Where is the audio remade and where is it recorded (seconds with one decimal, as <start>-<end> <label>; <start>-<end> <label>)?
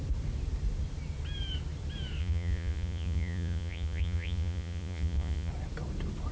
0.0-2.2 recorded; 2.2-5.5 remade; 5.5-6.3 recorded